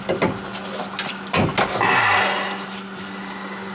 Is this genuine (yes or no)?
yes